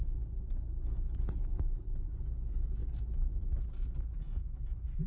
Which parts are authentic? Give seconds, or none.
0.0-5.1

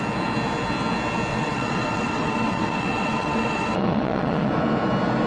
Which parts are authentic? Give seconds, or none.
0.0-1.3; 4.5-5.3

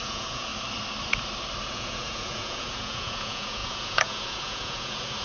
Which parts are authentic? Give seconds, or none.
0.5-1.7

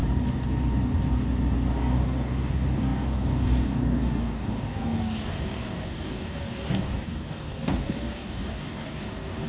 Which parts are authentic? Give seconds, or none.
0.0-1.7